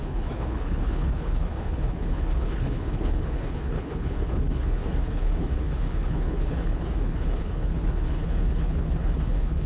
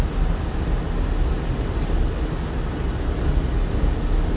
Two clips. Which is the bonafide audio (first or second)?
second